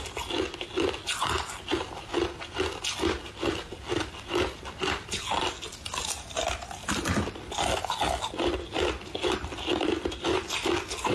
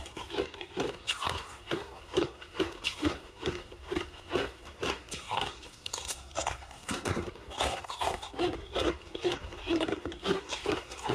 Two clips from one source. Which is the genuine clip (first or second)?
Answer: first